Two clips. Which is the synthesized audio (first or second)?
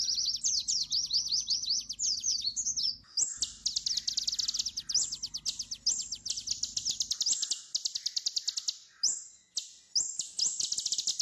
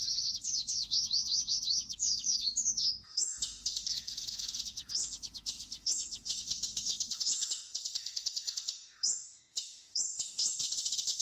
second